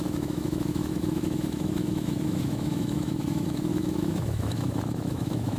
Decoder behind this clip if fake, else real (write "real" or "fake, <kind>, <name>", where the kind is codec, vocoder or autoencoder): fake, autoencoder, DAC-VAE